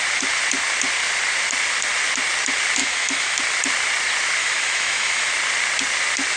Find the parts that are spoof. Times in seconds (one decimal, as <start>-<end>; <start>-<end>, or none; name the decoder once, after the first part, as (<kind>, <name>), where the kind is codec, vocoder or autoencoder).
2.8-3.4 (autoencoder, DAC-VAE); 4.4-5.3